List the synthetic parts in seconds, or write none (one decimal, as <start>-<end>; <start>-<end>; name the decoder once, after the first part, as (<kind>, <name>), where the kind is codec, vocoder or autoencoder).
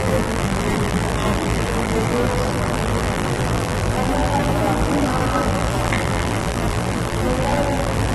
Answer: 0.0-8.1 (vocoder, BigVGAN v2)